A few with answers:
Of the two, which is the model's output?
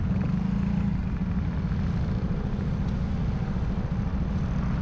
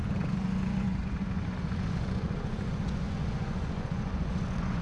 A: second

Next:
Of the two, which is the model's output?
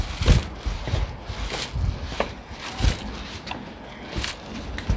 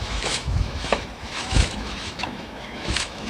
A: second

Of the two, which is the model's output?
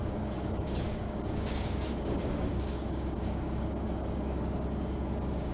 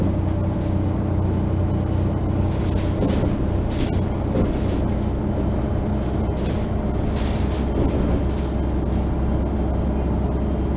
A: first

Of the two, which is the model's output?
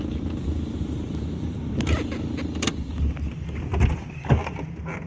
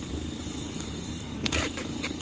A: second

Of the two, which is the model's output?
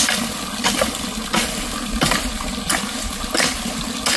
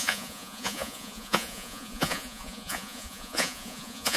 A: second